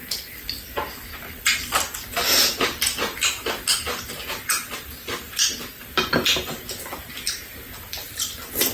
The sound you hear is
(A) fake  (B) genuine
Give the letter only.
B